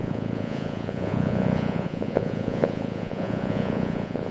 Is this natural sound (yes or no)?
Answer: no